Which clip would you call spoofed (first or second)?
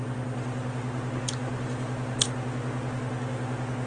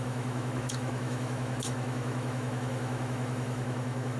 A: second